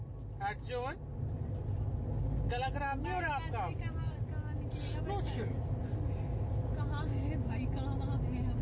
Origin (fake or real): real